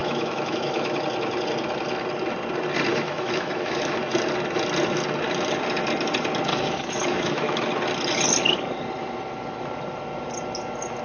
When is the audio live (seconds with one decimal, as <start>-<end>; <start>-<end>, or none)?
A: 1.0-2.9; 4.0-6.5; 7.6-11.0